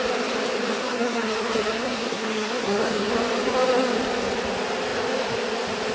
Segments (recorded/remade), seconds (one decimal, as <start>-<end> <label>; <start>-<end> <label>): 0.0-0.8 recorded; 0.8-3.1 remade; 3.1-5.9 recorded